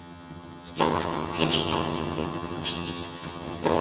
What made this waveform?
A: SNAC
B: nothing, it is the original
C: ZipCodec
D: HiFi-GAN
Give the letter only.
D